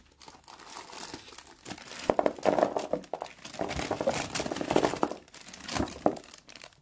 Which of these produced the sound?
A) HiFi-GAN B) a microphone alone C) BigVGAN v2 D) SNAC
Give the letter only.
B